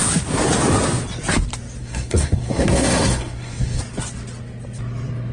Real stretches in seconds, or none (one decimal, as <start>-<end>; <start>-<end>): 0.0-1.8; 3.8-5.3